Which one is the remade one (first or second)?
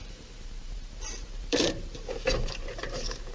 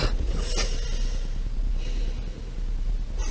first